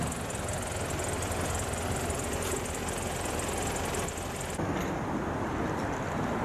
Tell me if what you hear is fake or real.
real